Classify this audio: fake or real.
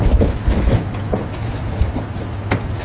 real